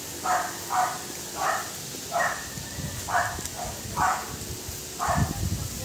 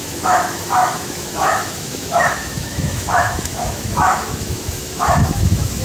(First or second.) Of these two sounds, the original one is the first